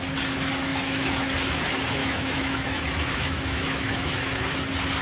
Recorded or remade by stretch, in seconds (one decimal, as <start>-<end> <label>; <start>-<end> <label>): 0.0-0.7 recorded; 0.7-1.3 remade; 1.3-2.0 recorded; 2.0-4.4 remade; 4.4-5.0 recorded

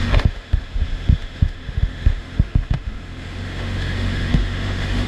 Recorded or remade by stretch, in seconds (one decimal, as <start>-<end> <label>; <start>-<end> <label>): 0.0-5.1 remade

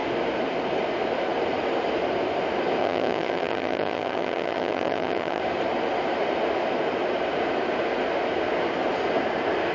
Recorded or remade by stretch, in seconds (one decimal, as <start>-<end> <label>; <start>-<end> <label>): 0.0-2.8 recorded; 2.8-5.4 remade; 5.4-9.7 recorded